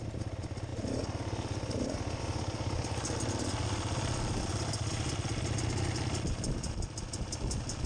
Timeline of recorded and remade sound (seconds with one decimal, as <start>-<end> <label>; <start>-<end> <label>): 0.0-7.9 recorded